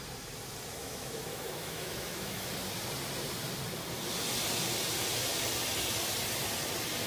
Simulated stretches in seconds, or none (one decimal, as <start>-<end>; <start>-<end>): 0.8-2.5